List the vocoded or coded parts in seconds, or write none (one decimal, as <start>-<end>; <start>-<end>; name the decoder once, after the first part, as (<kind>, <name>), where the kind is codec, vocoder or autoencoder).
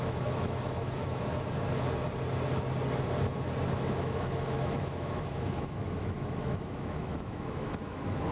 0.0-1.3 (autoencoder, DAC-VAE); 3.7-8.3